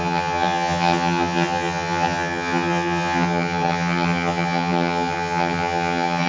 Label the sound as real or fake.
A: fake